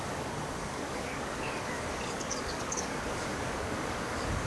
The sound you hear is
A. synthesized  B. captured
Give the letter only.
A